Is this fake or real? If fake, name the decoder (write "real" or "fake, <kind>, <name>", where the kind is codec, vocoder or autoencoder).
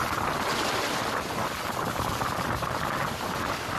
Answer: real